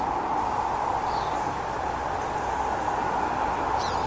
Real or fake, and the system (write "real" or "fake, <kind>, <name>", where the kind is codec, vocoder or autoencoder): real